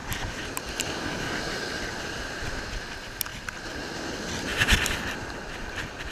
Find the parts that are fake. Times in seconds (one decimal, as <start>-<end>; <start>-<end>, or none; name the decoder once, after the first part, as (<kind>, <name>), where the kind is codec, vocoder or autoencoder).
none